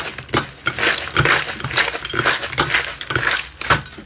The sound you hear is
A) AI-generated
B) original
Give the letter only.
B